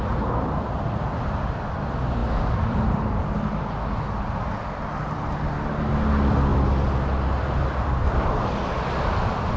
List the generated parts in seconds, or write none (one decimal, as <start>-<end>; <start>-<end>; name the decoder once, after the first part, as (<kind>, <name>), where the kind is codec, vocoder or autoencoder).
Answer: 2.2-3.7 (vocoder, BigVGAN v2)